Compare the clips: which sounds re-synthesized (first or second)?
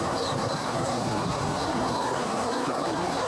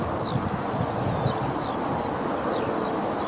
first